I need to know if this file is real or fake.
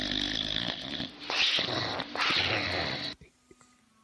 real